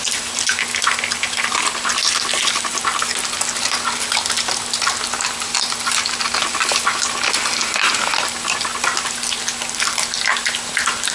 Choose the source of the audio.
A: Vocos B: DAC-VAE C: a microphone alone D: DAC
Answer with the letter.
C